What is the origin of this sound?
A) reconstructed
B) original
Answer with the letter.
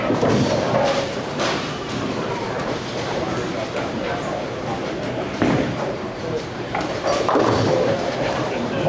A